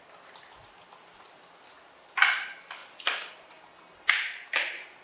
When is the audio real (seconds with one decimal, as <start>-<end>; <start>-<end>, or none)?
0.0-5.0